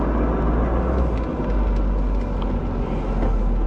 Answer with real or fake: real